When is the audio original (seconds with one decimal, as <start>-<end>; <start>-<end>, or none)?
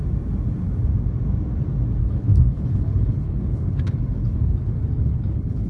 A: 0.0-2.0